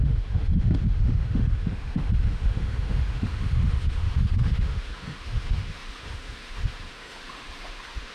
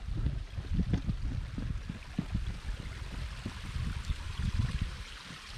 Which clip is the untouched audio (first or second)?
second